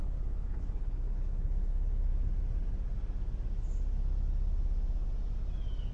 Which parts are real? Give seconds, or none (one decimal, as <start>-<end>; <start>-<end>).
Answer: 2.1-5.9